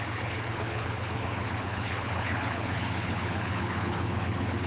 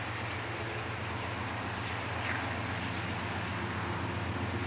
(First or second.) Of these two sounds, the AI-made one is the first